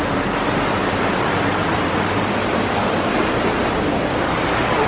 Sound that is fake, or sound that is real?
fake